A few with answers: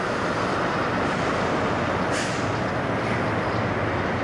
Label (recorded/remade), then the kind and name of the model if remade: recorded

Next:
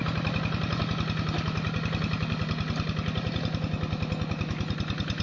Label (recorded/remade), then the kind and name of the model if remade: recorded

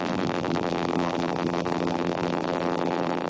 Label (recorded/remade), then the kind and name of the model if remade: remade, vocoder, BigVGAN v2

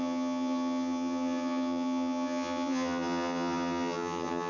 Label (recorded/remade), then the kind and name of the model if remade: remade, vocoder, HiFi-GAN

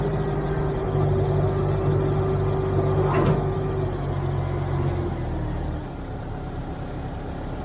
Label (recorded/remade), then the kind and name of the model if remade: recorded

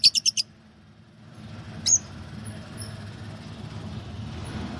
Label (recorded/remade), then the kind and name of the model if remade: recorded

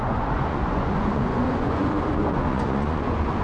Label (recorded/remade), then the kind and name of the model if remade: remade, vocoder, Vocos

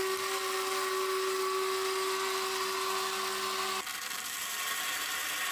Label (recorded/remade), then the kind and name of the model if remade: recorded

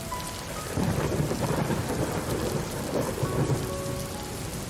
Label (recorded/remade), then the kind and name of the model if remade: recorded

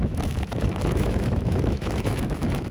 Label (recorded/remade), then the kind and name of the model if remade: remade, autoencoder, DAC-VAE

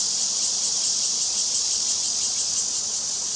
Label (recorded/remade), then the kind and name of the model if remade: remade, vocoder, BigVGAN v2